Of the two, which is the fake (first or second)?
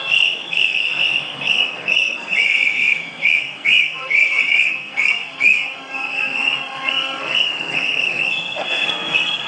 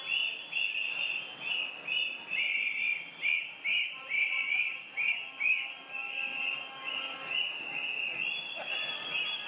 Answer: first